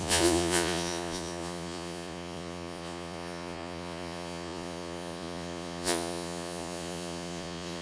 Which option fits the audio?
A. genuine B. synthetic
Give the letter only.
B